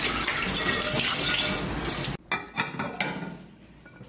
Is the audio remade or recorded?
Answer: recorded